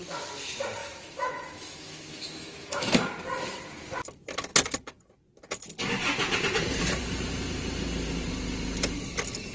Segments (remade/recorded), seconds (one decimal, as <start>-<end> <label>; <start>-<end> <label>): 0.0-0.8 recorded; 0.8-3.1 remade; 3.1-9.5 recorded